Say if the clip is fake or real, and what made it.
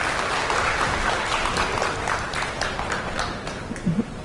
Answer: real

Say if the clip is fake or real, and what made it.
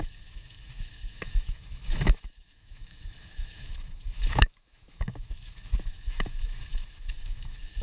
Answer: fake, autoencoder, DAC-VAE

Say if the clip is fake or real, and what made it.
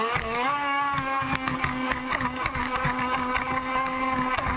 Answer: fake, codec, DAC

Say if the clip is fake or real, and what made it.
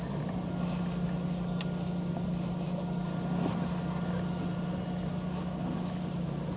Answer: real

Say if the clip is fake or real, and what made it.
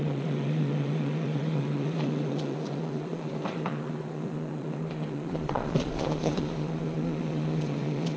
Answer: fake, vocoder, Vocos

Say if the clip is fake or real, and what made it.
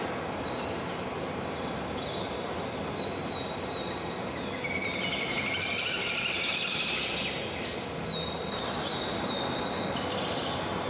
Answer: real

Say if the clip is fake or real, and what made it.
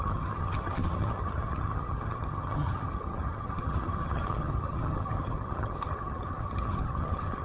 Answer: fake, vocoder, HiFi-GAN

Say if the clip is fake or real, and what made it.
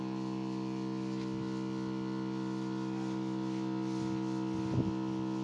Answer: real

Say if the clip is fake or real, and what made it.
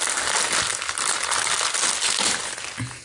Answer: real